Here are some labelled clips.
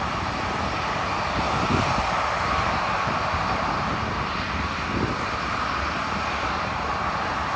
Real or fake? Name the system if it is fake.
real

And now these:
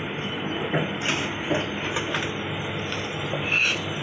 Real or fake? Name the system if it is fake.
real